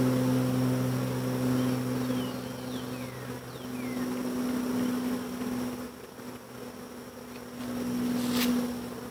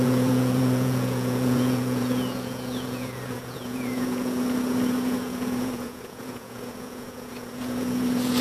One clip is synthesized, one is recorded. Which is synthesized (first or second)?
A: second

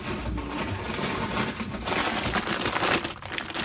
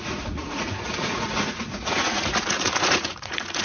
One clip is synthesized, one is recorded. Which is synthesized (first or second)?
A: second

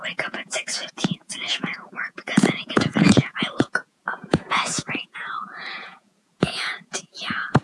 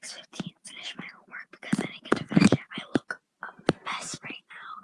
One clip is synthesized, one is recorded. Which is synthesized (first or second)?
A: first